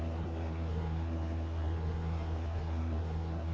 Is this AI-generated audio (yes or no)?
yes